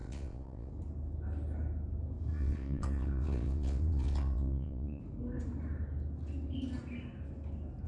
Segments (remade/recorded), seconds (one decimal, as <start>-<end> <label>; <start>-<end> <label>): 0.0-0.7 remade; 0.7-2.3 recorded; 2.3-5.0 remade; 5.0-7.9 recorded